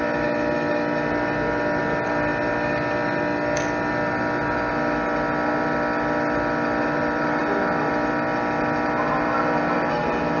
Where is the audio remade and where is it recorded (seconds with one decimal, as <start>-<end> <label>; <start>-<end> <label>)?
0.0-10.4 recorded

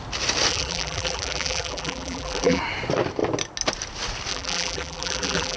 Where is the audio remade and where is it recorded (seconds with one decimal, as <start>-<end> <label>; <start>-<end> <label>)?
0.0-0.5 recorded; 0.5-2.6 remade; 2.6-4.3 recorded; 4.3-5.6 remade

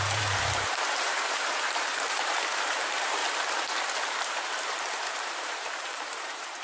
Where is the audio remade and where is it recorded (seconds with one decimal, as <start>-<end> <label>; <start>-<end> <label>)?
0.0-3.2 remade; 3.2-4.2 recorded; 4.2-6.6 remade

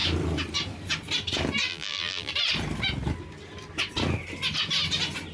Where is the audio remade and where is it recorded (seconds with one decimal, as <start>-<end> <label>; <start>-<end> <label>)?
0.0-1.7 recorded; 1.7-2.3 remade; 2.3-5.3 recorded